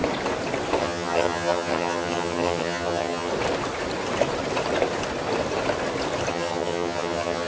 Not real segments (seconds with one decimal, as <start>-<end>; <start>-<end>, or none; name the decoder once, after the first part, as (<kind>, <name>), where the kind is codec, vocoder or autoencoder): 0.8-3.3 (vocoder, HiFi-GAN); 6.3-7.5